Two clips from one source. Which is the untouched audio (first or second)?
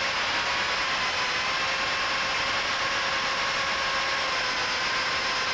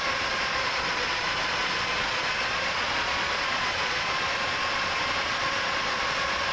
first